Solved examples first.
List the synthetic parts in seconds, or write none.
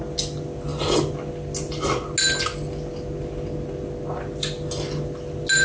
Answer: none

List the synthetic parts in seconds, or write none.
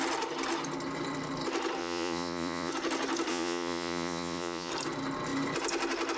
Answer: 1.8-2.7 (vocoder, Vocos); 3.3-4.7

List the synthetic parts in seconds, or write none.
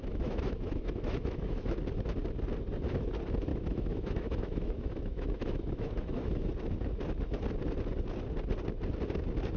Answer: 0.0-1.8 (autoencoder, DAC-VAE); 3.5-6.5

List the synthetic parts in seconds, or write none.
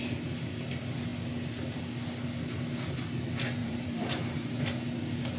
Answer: 3.6-4.6 (vocoder, BigVGAN v2)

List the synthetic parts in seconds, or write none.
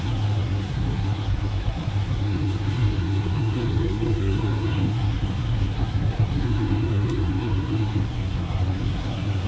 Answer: 0.0-9.5 (codec, SNAC)